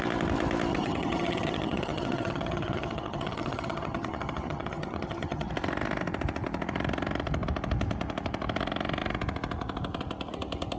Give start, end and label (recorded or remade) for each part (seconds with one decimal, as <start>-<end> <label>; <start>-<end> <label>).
0.0-0.7 recorded; 0.7-5.5 remade; 5.5-10.8 recorded